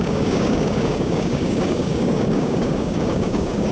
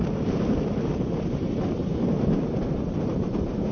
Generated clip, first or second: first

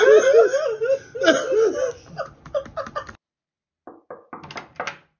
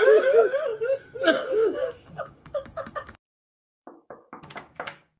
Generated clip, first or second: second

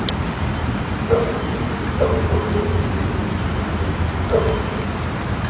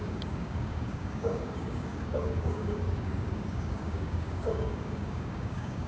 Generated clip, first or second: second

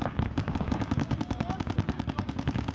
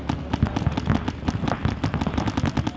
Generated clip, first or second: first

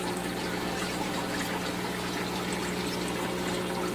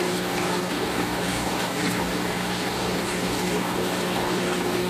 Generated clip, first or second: second